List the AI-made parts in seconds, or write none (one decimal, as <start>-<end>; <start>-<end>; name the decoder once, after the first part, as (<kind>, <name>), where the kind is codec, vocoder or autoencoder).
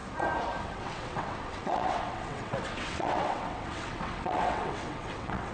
0.6-5.5 (vocoder, WaveNeXt)